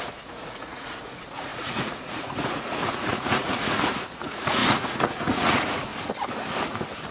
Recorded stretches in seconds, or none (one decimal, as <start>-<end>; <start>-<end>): 5.9-7.1